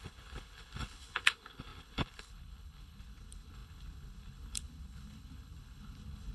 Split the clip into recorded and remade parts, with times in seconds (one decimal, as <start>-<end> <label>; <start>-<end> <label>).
0.0-6.3 remade